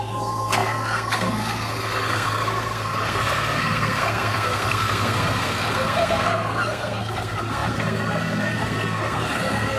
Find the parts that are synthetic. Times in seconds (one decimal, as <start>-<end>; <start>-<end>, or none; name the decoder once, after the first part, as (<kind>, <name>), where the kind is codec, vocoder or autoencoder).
0.0-9.8 (codec, SNAC)